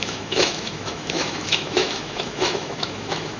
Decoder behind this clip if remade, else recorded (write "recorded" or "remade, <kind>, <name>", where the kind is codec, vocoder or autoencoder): remade, autoencoder, DAC-VAE